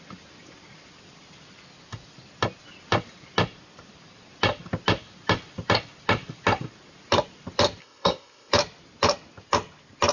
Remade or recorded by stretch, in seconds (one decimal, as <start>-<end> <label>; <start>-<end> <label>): 0.0-7.8 recorded; 7.8-8.5 remade; 8.5-10.1 recorded